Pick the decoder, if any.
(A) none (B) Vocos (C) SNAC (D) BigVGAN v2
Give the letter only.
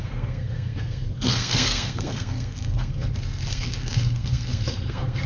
C